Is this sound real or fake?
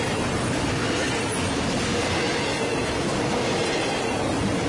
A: real